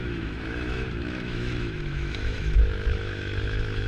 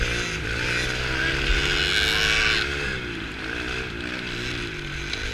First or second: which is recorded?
second